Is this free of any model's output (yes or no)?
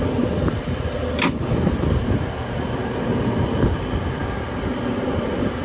yes